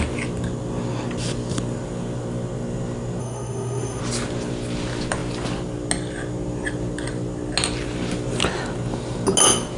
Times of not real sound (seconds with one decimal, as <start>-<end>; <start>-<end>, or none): 3.2-4.0